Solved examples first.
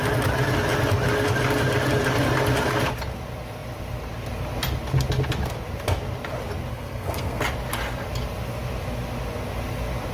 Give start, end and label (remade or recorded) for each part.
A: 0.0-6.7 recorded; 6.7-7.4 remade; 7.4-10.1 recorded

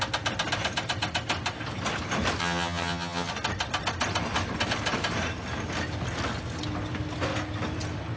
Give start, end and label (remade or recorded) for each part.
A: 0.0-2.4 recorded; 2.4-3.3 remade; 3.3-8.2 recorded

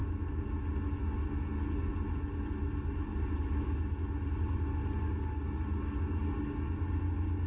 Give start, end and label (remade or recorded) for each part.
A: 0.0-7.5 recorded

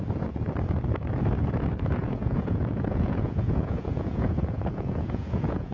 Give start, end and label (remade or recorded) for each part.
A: 0.0-2.0 recorded; 2.0-5.7 remade